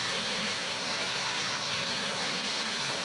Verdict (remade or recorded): remade